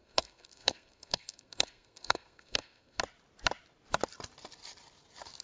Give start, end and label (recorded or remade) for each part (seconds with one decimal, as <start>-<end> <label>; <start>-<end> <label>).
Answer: 0.0-3.0 remade; 3.0-5.4 recorded